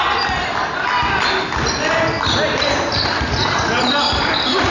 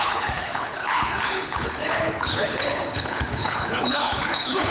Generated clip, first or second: second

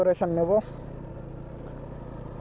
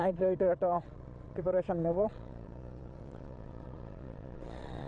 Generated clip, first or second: second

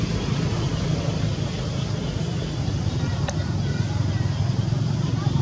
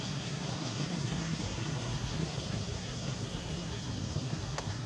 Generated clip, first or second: second